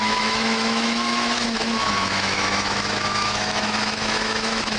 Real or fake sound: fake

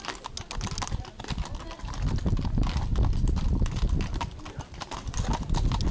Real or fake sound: real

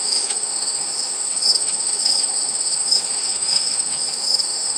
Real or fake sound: fake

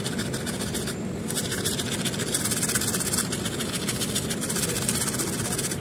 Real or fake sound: real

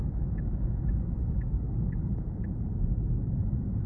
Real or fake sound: fake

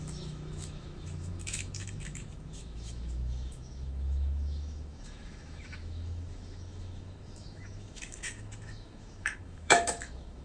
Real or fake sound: fake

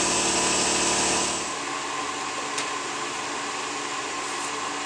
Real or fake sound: real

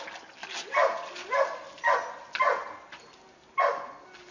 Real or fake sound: real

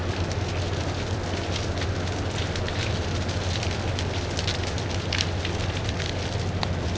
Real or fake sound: real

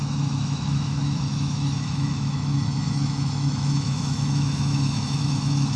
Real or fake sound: fake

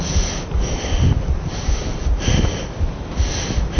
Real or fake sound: real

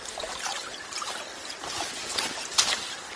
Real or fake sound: real